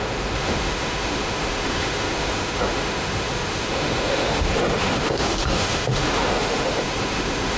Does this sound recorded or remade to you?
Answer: remade